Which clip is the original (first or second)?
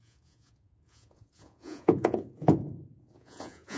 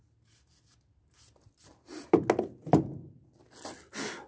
second